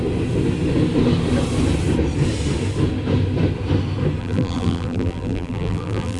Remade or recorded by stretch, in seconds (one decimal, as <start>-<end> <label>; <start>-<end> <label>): 0.0-4.2 recorded; 4.2-6.2 remade